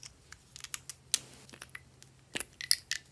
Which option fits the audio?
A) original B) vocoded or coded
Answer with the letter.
A